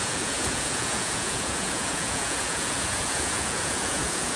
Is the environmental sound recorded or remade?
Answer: remade